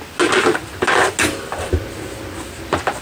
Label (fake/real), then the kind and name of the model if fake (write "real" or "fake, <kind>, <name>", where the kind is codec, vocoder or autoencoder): real